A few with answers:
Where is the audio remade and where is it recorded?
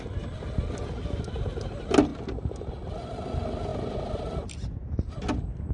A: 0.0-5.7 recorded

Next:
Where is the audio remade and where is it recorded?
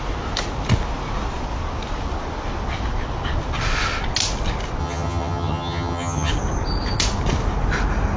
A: 0.0-4.8 recorded; 4.8-6.3 remade; 6.3-8.2 recorded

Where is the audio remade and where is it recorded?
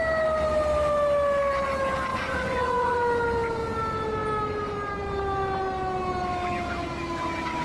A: 0.0-2.1 recorded; 2.1-3.0 remade; 3.0-7.6 recorded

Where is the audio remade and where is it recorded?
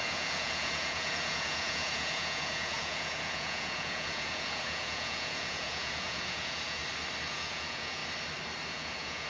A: 0.0-6.8 remade; 6.8-7.3 recorded; 7.3-8.0 remade; 8.0-8.7 recorded; 8.7-9.3 remade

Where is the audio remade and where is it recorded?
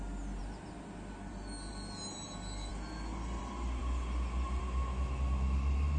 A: 0.0-6.0 recorded